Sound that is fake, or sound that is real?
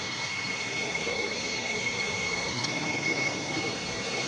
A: fake